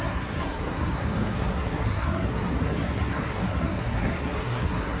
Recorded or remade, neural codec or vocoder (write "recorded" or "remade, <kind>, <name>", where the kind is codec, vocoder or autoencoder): remade, codec, SNAC